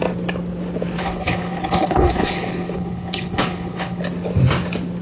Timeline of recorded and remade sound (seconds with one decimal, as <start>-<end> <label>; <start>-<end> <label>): 0.0-1.0 recorded; 1.0-4.0 remade; 4.0-5.0 recorded